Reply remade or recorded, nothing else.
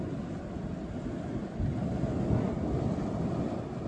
recorded